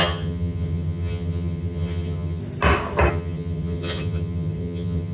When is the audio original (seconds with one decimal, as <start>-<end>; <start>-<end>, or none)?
2.4-3.1